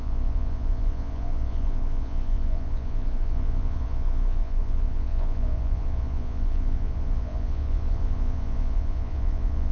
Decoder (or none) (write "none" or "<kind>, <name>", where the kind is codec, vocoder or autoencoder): vocoder, Vocos